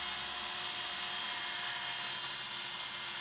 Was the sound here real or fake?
real